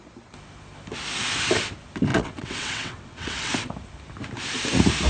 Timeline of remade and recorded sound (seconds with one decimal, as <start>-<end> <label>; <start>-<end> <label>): 0.0-2.1 recorded; 2.1-3.5 remade; 3.5-5.1 recorded